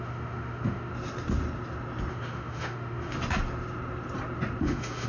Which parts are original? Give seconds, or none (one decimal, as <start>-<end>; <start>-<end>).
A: 0.9-2.1; 3.1-4.6